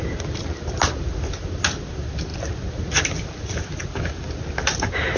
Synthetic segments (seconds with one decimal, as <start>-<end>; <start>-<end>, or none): none